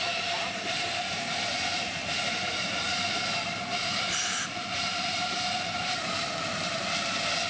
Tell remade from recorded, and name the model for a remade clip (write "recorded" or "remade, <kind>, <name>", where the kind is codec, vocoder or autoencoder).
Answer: remade, vocoder, BigVGAN v2